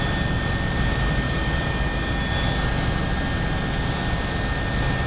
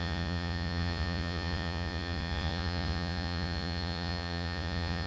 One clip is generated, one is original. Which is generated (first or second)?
second